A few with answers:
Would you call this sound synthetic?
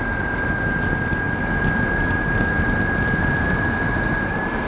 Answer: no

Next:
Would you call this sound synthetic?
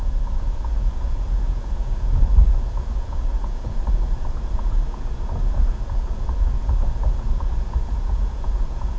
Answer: yes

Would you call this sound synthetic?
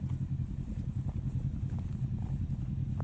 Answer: no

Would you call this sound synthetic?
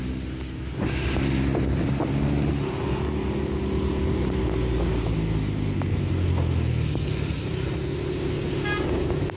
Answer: no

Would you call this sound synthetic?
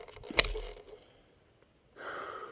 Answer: no